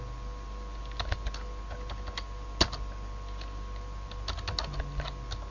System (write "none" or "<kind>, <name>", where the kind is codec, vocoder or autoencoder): none